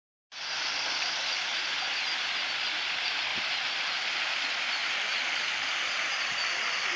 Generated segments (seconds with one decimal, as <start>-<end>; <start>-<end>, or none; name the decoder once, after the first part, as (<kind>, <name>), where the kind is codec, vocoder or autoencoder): 3.3-4.2 (vocoder, BigVGAN v2); 5.1-6.4